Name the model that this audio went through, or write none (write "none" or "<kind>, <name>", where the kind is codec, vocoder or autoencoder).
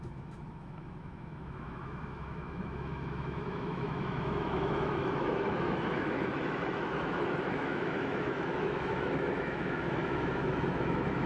autoencoder, DAC-VAE